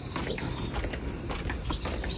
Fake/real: real